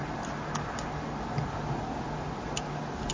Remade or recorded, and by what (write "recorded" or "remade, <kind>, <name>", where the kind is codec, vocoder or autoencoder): recorded